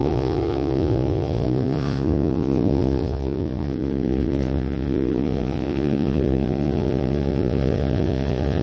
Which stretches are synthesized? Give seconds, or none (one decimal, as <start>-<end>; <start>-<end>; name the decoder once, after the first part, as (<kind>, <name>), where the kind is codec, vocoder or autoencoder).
0.0-8.6 (vocoder, Vocos)